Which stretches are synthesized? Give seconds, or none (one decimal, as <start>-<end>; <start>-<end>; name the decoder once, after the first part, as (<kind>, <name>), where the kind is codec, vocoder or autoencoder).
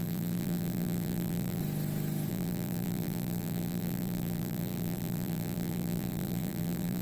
0.0-1.6 (vocoder, BigVGAN v2); 2.3-7.0